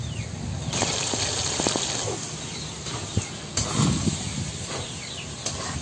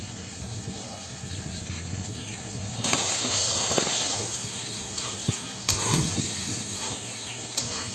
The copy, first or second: second